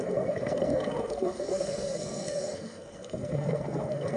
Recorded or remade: remade